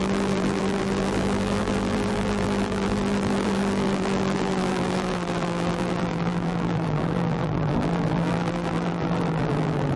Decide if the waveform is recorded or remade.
remade